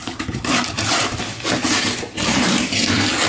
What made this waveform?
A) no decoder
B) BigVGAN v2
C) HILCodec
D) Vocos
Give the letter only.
B